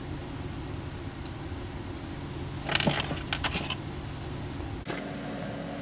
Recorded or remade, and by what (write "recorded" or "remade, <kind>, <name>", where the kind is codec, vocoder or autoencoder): recorded